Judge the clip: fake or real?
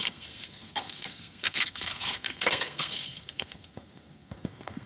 fake